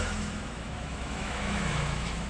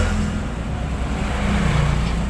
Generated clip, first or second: first